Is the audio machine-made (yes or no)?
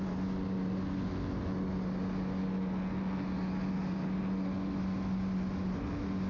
no